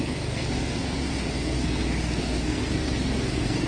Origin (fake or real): fake